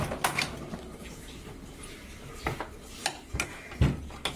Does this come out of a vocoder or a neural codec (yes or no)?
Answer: no